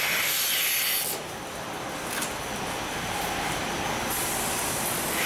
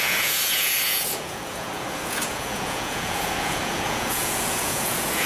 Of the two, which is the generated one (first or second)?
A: second